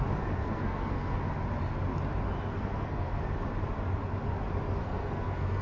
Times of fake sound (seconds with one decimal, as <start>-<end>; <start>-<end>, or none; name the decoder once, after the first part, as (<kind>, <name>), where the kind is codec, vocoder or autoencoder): 0.4-1.2 (codec, SNAC); 2.5-3.2; 4.8-5.6